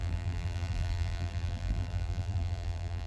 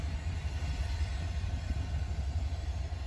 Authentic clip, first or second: second